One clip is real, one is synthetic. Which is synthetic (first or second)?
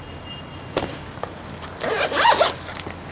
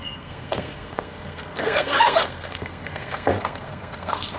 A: second